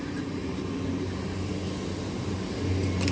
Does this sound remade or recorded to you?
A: recorded